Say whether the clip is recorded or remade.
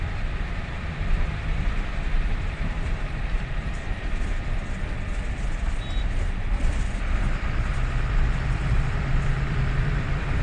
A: remade